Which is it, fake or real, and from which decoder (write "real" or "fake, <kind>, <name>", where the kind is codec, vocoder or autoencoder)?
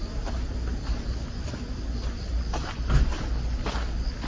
real